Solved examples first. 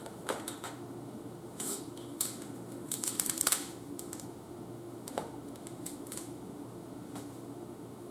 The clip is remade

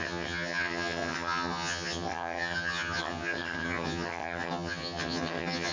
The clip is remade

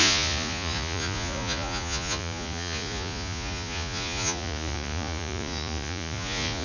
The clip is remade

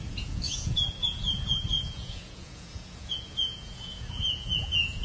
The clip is remade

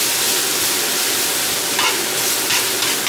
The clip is recorded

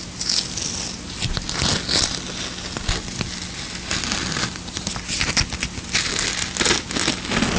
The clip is recorded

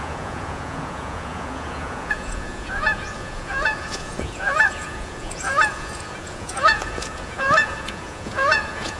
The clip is remade